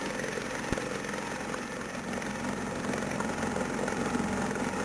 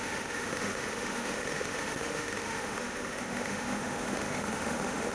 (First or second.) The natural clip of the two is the first